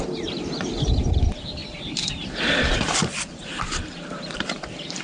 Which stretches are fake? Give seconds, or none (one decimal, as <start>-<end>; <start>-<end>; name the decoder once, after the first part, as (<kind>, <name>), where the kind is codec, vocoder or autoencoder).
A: 0.0-1.6 (vocoder, BigVGAN v2); 2.4-5.0